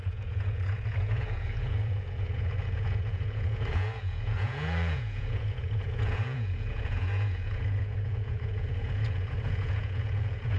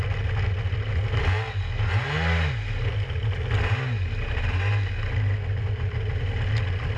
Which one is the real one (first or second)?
second